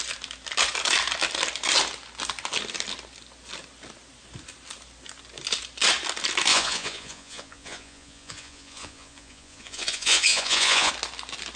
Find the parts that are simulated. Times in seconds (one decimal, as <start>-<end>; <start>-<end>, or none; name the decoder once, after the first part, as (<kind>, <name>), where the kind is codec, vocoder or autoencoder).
6.5-10.9 (vocoder, Vocos)

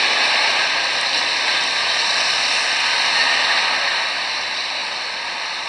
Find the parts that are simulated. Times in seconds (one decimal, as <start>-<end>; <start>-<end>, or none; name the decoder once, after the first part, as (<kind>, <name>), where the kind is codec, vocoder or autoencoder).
0.0-0.8 (vocoder, BigVGAN v2); 3.7-4.8